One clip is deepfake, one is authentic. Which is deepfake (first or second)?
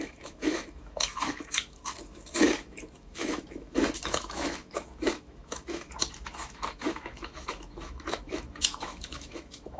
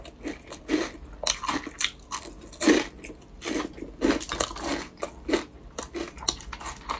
first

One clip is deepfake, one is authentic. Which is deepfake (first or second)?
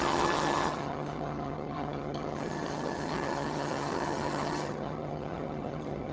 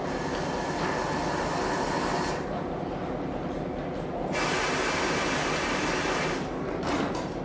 first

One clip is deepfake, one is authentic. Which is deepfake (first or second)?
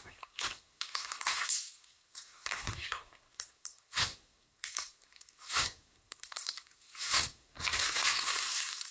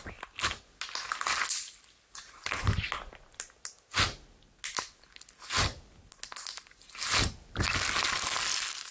first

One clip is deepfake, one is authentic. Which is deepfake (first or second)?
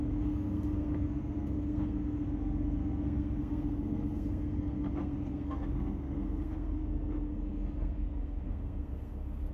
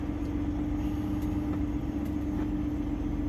first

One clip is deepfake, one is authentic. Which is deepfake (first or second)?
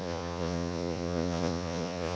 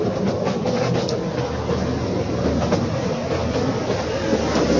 first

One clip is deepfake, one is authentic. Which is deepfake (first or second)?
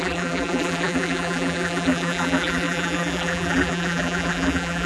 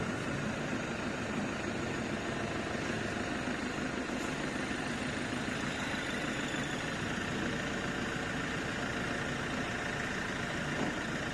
first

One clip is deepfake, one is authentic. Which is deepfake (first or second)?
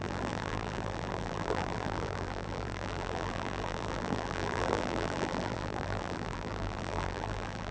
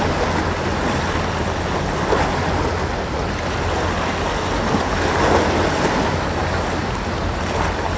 first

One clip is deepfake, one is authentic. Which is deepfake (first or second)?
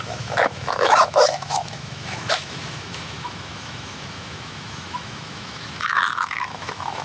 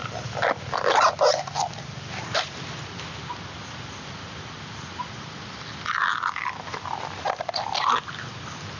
first